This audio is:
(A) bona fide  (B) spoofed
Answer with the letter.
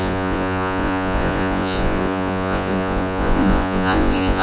B